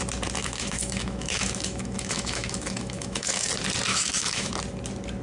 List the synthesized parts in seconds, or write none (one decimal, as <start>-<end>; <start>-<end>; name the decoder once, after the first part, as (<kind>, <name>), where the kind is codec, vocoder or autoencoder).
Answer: 0.4-3.5 (autoencoder, DAC-VAE); 3.9-4.5